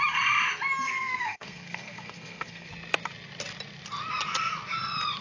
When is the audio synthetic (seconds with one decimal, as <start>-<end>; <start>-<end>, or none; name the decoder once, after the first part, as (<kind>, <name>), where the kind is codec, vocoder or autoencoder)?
0.8-2.7 (codec, SNAC)